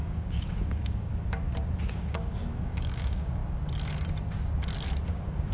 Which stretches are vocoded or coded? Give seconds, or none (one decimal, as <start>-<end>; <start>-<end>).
0.0-1.1; 1.9-3.4; 5.1-5.5